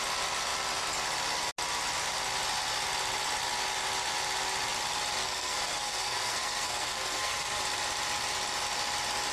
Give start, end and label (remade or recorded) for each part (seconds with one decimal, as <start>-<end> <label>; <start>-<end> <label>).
0.0-5.2 recorded; 5.2-7.6 remade; 7.6-9.3 recorded